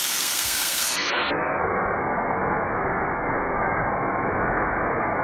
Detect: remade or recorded remade